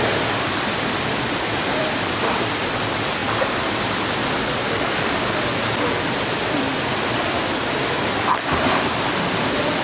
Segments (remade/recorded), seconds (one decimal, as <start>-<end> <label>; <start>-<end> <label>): 0.0-3.2 remade; 3.2-3.8 recorded; 3.8-9.8 remade